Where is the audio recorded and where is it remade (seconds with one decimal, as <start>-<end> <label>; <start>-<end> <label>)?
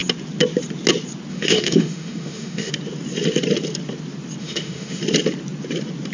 0.0-1.3 recorded; 1.3-2.7 remade; 2.7-4.4 recorded; 4.4-5.0 remade; 5.0-6.1 recorded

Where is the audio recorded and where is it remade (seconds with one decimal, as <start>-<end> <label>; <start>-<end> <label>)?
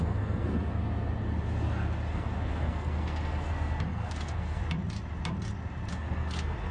0.0-0.8 remade; 0.8-2.1 recorded; 2.1-4.6 remade; 4.6-5.9 recorded; 5.9-6.7 remade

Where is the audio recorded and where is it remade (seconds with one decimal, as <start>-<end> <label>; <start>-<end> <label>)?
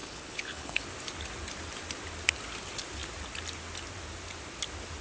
0.0-0.8 remade; 0.8-5.0 recorded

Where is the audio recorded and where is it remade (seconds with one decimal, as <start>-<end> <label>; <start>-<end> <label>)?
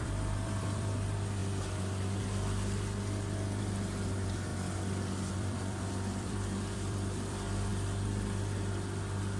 0.0-1.4 remade; 1.4-3.6 recorded; 3.6-4.5 remade; 4.5-5.3 recorded; 5.3-7.7 remade; 7.7-9.4 recorded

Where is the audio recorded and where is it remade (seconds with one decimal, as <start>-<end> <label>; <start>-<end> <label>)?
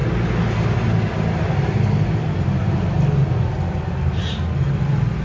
0.0-5.2 recorded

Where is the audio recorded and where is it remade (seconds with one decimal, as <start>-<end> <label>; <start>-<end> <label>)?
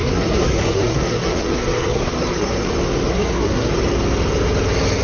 0.0-2.7 remade; 2.7-3.1 recorded; 3.1-3.7 remade; 3.7-5.0 recorded